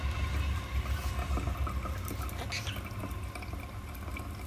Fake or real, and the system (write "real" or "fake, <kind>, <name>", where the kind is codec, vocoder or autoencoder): real